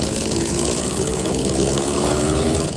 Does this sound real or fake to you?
fake